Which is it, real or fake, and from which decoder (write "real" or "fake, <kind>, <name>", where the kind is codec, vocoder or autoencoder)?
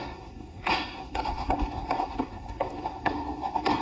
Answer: fake, codec, SNAC